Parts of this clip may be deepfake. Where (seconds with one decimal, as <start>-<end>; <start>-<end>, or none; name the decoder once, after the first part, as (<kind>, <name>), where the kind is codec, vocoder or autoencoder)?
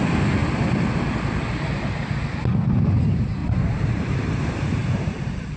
3.4-4.3 (vocoder, BigVGAN v2); 4.8-5.6